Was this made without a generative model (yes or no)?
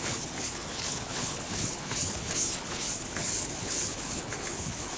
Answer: no